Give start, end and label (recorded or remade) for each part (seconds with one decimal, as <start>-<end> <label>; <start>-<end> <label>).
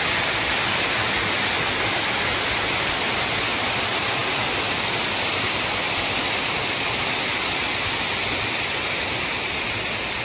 0.0-4.2 recorded; 4.2-7.7 remade; 7.7-10.2 recorded